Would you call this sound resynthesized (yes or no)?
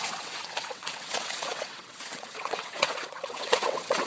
yes